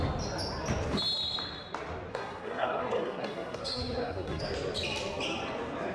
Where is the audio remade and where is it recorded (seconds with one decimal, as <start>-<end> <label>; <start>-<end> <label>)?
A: 0.0-2.1 recorded; 2.1-4.4 remade; 4.4-5.9 recorded